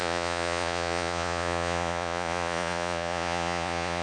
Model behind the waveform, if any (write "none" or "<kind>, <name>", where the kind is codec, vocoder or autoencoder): vocoder, Vocos